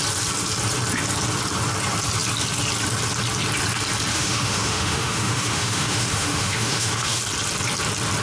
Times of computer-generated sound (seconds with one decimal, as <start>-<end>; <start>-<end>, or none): 4.1-7.2